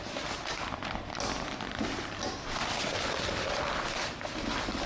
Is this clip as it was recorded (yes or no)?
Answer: yes